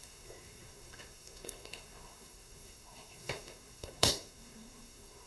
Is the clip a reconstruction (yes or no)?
yes